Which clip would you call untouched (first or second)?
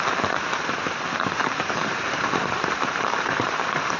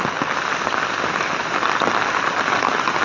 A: second